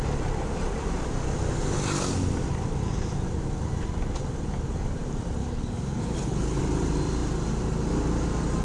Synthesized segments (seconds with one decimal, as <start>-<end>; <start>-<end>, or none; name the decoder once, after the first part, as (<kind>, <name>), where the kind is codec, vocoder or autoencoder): 5.4-6.6 (codec, HILCodec)